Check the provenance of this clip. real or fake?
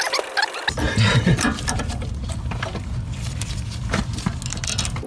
real